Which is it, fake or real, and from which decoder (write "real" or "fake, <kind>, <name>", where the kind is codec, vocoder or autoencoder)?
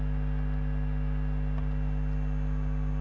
real